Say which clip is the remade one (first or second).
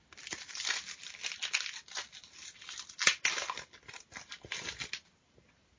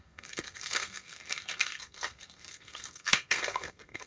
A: second